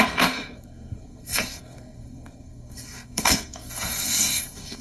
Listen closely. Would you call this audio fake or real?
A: fake